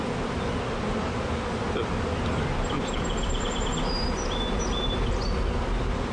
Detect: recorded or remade recorded